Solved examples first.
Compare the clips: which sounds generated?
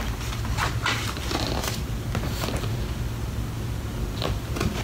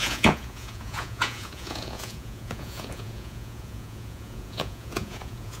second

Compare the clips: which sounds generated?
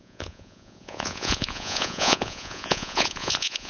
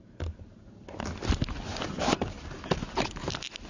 first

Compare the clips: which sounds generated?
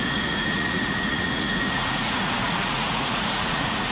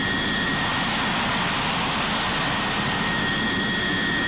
first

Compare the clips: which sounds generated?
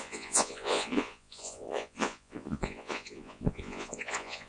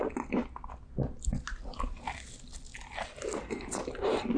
first